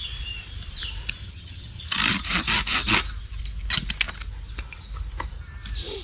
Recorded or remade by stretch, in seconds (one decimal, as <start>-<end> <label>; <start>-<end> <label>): 0.0-1.2 recorded; 1.2-1.8 remade; 1.8-6.0 recorded